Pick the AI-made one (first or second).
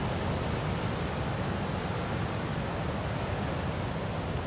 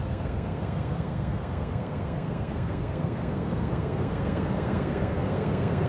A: second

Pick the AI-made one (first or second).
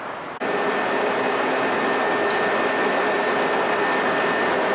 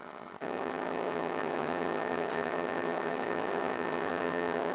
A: second